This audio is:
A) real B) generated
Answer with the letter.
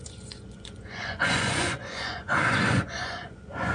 B